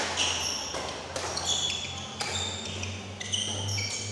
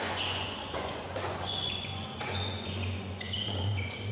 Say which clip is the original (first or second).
first